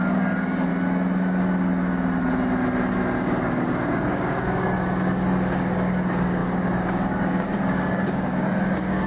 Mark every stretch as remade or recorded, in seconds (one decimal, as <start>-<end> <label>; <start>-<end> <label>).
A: 0.0-0.7 remade; 0.7-3.2 recorded; 3.2-9.1 remade